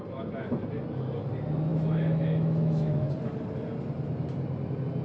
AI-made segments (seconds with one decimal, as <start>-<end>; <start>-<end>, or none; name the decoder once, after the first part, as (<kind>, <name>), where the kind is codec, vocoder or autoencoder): 1.7-3.1 (autoencoder, DAC-VAE)

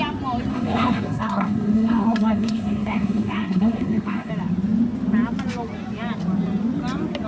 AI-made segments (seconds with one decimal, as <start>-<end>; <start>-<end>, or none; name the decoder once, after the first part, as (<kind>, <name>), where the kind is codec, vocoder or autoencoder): 0.5-4.3 (codec, SNAC)

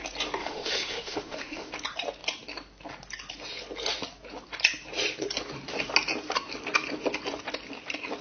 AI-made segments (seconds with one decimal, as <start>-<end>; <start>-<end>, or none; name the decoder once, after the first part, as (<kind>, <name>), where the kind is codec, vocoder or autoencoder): 0.4-1.7 (autoencoder, DAC-VAE)

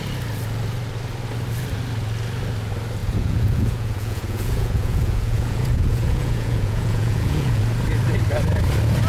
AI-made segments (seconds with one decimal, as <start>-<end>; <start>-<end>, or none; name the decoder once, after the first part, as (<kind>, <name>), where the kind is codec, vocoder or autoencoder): 3.0-7.6 (vocoder, Vocos)

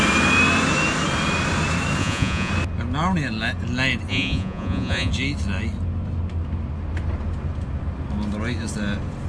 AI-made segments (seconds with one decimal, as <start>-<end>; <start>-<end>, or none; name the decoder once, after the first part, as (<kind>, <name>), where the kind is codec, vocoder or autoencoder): 2.0-2.5 (vocoder, Vocos); 4.1-5.1